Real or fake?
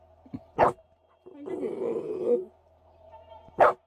real